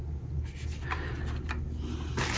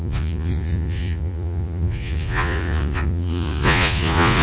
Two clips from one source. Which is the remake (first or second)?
second